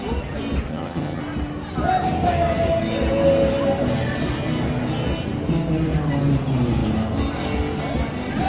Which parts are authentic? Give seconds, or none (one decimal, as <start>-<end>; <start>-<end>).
0.0-0.7; 1.2-8.5